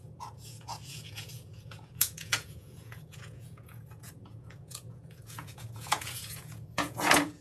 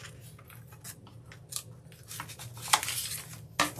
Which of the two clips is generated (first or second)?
first